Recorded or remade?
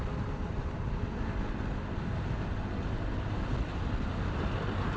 recorded